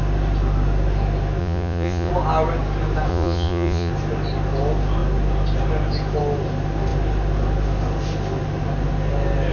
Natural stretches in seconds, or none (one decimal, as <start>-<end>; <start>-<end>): 0.0-1.4; 2.1-3.1; 3.9-9.5